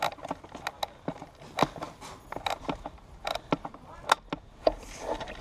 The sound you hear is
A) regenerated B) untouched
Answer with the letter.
B